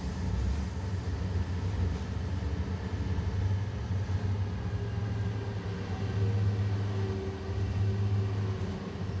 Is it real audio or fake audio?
real